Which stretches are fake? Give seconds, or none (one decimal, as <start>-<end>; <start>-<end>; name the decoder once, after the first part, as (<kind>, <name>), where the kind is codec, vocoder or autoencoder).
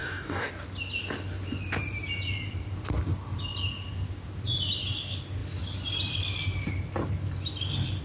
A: 0.0-0.5 (codec, DAC)